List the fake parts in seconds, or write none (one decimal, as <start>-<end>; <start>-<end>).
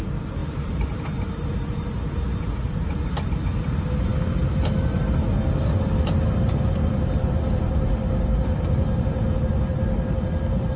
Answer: 0.0-4.1; 5.8-10.8